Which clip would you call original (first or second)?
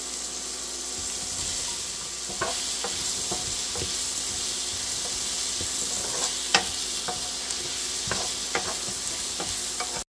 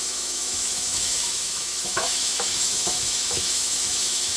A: first